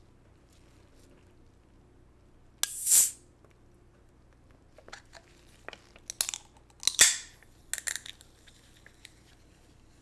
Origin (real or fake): real